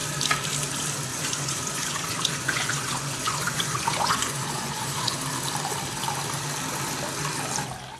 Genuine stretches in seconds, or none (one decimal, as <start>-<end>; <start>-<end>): 0.0-1.1; 5.2-8.0